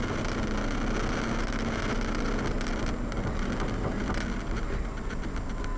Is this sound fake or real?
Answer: real